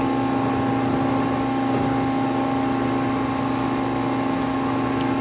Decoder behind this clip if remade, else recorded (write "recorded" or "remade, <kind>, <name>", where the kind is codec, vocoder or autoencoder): recorded